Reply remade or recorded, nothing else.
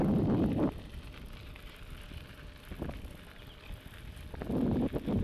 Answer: remade